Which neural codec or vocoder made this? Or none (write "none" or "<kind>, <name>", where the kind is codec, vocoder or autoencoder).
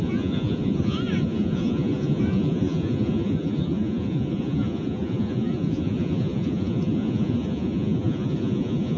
vocoder, Vocos